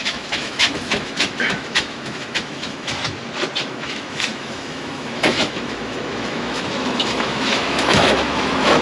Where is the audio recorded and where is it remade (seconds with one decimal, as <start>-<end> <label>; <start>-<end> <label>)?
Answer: 0.0-3.0 remade; 3.0-3.6 recorded; 3.6-8.8 remade